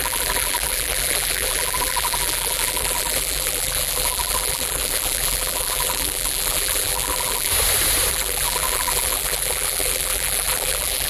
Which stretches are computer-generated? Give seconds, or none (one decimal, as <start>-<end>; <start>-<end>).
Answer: 0.0-7.5; 8.1-11.1